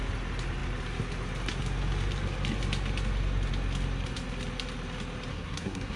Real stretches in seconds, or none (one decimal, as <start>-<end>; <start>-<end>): 0.0-5.3